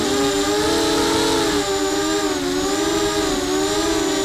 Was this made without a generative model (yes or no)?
yes